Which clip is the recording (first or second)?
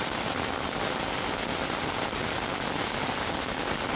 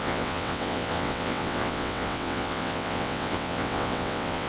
first